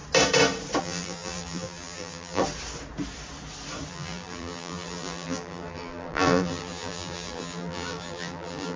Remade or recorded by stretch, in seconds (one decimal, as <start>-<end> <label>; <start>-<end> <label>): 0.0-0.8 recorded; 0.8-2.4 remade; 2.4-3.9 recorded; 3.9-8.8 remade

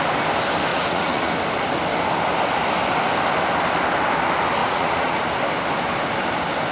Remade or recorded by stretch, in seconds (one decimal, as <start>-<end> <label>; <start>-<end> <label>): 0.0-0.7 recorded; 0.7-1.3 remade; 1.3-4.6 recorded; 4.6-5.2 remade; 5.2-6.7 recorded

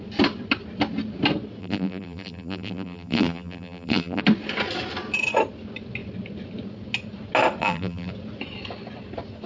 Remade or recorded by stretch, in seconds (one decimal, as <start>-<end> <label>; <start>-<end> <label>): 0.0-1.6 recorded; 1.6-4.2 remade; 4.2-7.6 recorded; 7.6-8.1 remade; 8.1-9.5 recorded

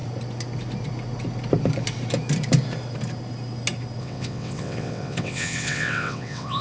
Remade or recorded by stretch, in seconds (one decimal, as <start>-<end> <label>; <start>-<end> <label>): 0.0-4.0 recorded; 4.0-6.6 remade

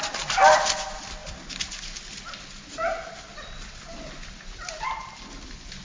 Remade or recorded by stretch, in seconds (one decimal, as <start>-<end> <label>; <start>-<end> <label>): 0.0-5.8 recorded

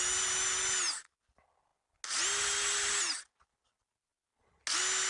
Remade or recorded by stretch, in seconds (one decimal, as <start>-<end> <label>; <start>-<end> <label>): 0.0-5.1 recorded

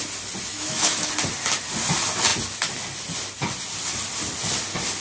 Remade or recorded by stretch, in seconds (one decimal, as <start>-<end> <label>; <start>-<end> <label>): 0.0-0.5 recorded; 0.5-1.1 remade; 1.1-5.0 recorded